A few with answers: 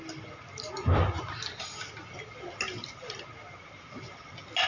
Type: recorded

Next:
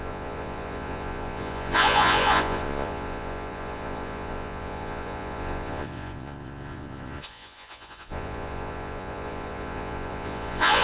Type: remade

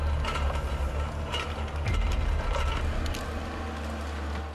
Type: recorded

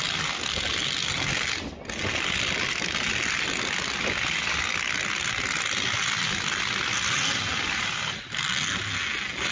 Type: recorded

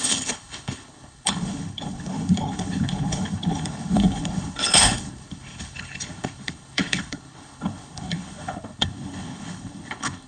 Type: remade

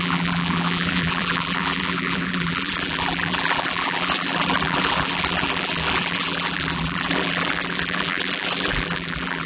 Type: remade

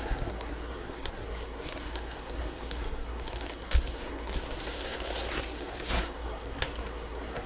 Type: remade